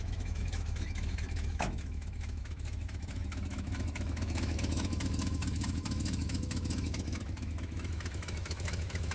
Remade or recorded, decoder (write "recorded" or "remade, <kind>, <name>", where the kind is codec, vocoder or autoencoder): remade, autoencoder, DAC-VAE